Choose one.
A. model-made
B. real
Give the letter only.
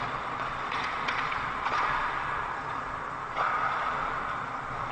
A